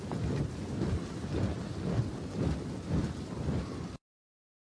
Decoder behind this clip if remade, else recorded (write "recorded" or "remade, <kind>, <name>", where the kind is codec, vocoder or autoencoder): recorded